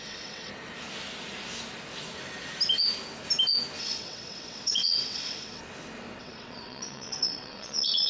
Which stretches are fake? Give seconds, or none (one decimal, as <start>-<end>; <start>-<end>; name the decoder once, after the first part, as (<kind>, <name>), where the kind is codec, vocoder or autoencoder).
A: 0.0-0.5 (vocoder, WaveNeXt); 3.8-5.6; 6.2-8.1